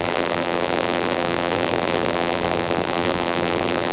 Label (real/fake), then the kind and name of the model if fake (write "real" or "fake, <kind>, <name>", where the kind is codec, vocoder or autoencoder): fake, vocoder, BigVGAN v2